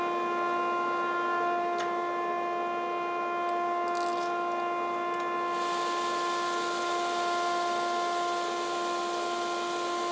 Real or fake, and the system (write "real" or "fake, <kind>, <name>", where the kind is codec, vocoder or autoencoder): real